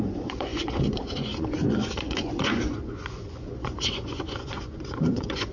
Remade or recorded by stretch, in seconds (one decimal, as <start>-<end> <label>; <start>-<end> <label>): 0.0-5.5 remade